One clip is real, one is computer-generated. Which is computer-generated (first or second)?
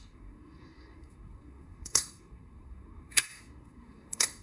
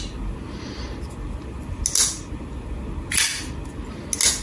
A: first